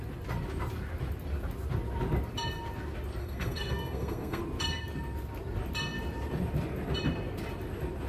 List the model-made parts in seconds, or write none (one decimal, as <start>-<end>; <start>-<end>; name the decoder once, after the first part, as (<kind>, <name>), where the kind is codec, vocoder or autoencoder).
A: 3.2-4.4 (codec, SNAC)